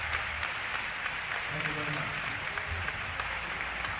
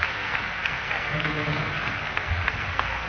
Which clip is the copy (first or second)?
second